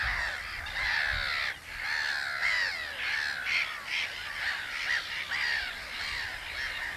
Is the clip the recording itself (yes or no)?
yes